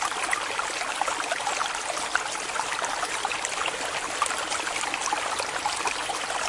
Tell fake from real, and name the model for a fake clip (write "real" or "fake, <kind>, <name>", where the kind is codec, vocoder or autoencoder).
real